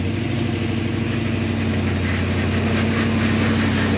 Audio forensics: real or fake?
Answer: real